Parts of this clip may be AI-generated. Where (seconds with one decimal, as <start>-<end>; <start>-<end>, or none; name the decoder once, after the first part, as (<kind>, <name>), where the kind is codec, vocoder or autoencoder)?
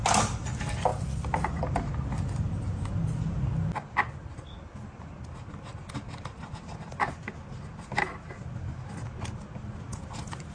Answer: 0.9-1.6 (vocoder, BigVGAN v2)